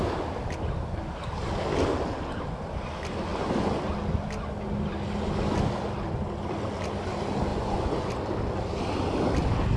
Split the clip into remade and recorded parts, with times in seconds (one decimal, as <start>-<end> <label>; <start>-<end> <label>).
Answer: 0.0-7.5 recorded; 7.5-8.1 remade; 8.1-9.8 recorded